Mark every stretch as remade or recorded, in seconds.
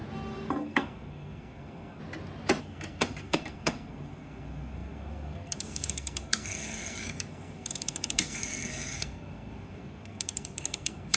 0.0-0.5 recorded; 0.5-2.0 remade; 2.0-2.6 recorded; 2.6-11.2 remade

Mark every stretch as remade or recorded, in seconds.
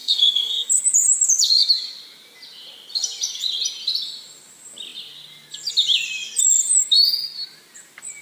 0.0-0.7 remade; 0.7-8.2 recorded